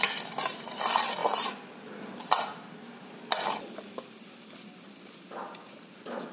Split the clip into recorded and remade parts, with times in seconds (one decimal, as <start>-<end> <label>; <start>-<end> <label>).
0.0-6.3 recorded